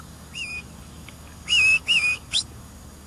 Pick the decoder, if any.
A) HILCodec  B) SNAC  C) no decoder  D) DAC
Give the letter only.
D